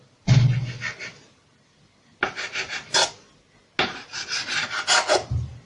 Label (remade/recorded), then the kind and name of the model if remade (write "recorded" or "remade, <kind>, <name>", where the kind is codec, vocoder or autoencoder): recorded